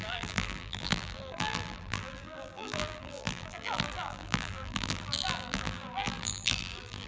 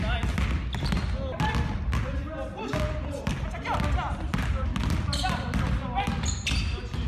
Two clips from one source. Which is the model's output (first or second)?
first